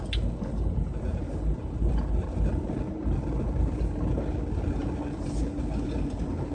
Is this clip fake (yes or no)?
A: no